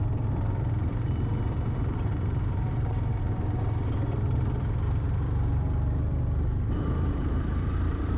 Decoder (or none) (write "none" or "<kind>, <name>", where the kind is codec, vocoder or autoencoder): vocoder, BigVGAN v2